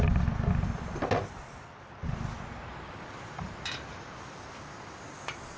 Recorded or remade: recorded